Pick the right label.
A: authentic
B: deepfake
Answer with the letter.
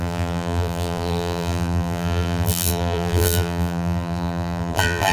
B